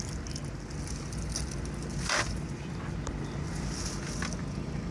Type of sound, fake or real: real